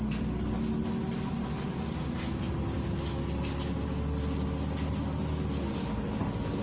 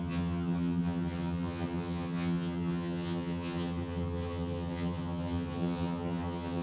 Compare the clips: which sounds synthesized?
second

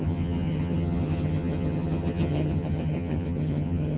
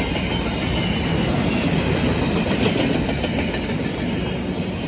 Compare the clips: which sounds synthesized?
first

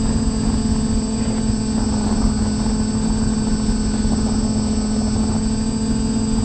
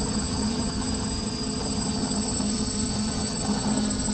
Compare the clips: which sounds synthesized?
second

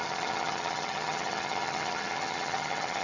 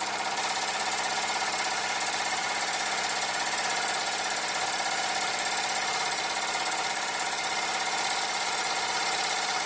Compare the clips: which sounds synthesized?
first